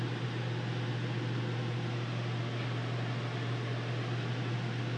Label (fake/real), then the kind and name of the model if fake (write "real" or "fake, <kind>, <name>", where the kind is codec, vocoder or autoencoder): real